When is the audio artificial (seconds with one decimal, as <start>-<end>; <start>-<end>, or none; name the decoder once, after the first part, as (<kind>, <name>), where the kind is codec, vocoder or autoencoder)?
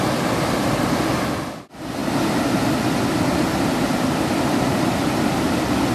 none